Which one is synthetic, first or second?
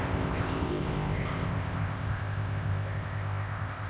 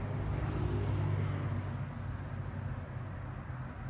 first